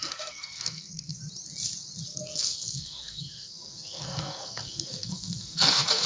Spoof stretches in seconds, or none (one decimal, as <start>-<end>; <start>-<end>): 0.0-1.2; 2.1-6.1